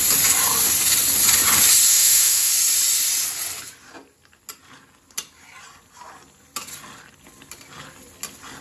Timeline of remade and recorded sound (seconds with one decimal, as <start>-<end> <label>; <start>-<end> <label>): 0.0-1.9 recorded; 1.9-2.5 remade; 2.5-8.6 recorded